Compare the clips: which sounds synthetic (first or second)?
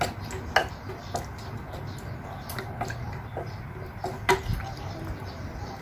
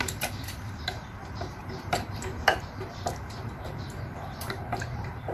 second